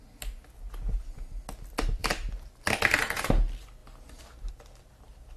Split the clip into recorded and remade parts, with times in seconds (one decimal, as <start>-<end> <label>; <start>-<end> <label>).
0.0-5.4 recorded